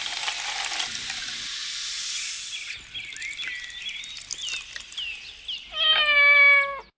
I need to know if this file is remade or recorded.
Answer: recorded